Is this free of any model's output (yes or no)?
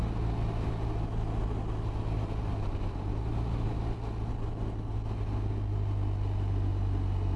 yes